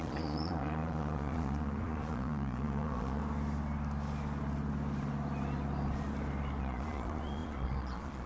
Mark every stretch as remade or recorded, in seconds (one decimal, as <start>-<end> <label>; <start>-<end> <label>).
0.0-3.2 remade; 3.2-6.6 recorded; 6.6-8.3 remade